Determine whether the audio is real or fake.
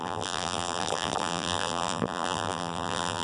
fake